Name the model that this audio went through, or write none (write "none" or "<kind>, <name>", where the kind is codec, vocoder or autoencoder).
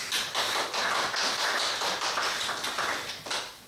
none